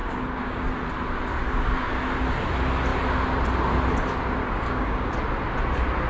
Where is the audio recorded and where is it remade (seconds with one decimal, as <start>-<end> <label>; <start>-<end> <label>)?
0.0-0.7 remade; 0.7-1.4 recorded; 1.4-2.0 remade; 2.0-4.4 recorded; 4.4-5.1 remade; 5.1-6.1 recorded

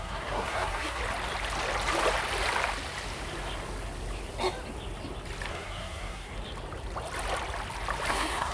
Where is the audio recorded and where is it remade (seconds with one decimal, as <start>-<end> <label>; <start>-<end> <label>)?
0.0-1.0 remade; 1.0-5.5 recorded; 5.5-6.3 remade; 6.3-8.1 recorded; 8.1-8.5 remade

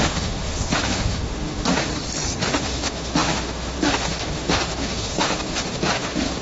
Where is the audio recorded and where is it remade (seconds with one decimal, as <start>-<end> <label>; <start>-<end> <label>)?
0.0-1.9 remade; 1.9-2.4 recorded; 2.4-6.4 remade

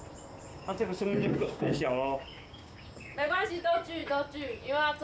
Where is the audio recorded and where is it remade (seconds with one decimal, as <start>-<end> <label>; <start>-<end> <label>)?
0.0-0.5 recorded; 0.5-3.5 remade; 3.5-5.0 recorded

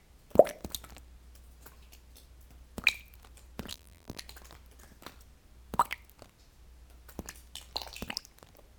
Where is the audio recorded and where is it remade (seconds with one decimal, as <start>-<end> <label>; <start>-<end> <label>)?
0.0-3.7 recorded; 3.7-4.2 remade; 4.2-8.8 recorded